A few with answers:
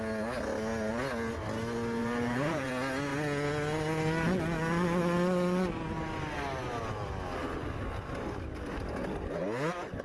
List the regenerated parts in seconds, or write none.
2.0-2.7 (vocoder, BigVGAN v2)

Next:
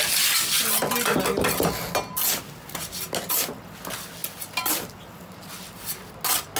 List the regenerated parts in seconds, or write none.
none